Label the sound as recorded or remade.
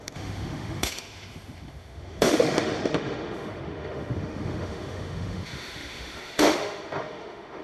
remade